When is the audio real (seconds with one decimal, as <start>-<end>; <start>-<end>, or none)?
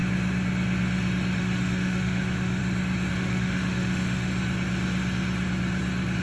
0.0-1.4; 2.6-3.1; 4.3-6.2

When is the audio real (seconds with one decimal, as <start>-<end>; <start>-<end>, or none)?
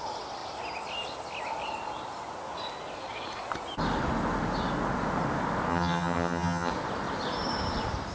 0.0-5.7; 6.7-8.1